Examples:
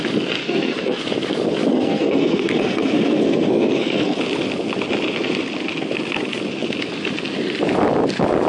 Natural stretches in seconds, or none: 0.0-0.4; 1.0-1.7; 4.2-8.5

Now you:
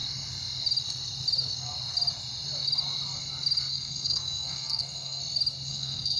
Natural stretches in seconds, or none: 0.0-3.7; 5.2-5.7

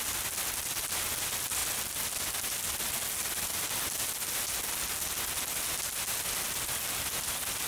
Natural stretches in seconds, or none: 0.0-7.7